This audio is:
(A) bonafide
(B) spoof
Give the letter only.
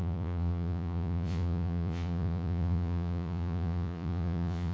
B